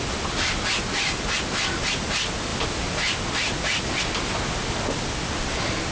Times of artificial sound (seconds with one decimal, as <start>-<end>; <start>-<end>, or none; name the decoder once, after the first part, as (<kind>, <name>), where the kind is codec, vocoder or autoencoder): none